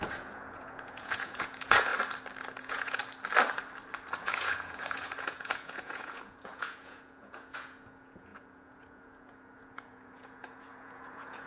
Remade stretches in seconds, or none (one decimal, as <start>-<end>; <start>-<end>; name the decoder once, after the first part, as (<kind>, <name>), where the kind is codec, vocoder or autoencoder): 0.0-1.9 (vocoder, Vocos); 2.6-3.0; 4.2-11.5